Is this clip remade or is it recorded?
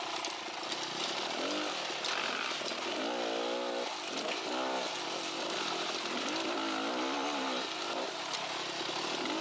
recorded